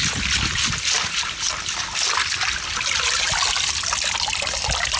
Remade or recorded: recorded